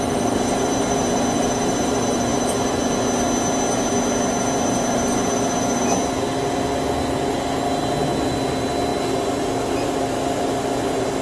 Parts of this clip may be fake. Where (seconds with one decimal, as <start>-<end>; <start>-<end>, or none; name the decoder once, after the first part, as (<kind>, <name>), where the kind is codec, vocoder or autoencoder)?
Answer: none